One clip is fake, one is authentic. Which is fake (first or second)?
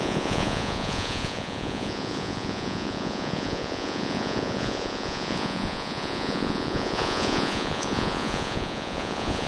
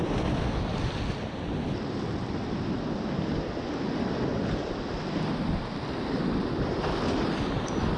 first